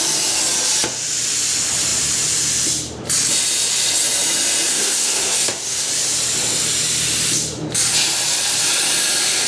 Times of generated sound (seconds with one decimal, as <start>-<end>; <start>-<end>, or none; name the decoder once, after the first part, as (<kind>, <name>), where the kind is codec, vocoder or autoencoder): 4.7-5.9 (codec, SNAC)